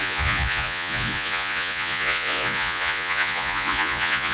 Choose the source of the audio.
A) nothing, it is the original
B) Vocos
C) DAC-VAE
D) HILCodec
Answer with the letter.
B